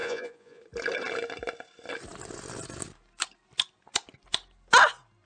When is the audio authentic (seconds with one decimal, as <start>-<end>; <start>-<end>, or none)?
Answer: 0.6-5.3